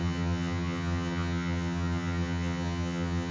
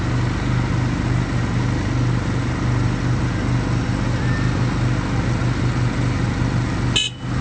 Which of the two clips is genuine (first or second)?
second